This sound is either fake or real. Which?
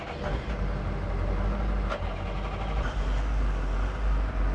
real